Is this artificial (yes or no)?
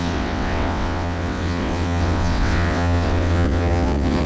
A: yes